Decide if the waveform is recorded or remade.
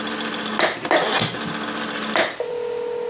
recorded